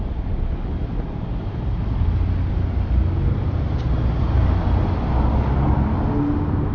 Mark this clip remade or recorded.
recorded